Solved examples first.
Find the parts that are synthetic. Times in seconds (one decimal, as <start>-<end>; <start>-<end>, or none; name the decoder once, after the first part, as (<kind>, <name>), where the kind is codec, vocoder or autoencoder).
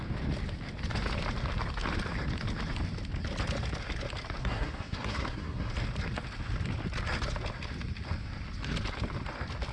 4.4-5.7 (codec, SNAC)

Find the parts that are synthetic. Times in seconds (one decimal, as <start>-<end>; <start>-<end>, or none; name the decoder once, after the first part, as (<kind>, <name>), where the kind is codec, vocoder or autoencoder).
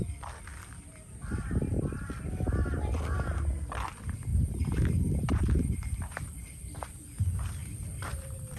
4.3-6.9 (vocoder, BigVGAN v2); 7.6-8.6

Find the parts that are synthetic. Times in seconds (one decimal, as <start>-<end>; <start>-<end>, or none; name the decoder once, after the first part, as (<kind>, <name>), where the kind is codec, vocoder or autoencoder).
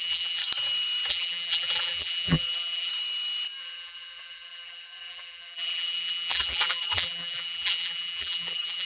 0.0-0.4 (vocoder, BigVGAN v2); 1.1-2.9; 3.6-8.8